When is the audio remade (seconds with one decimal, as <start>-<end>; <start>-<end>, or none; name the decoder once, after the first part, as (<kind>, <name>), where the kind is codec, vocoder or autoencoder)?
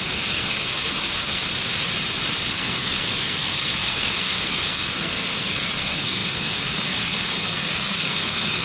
0.0-1.4 (codec, SNAC); 2.5-8.6